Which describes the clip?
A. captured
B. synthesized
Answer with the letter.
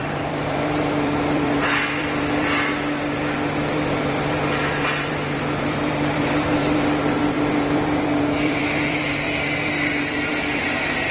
B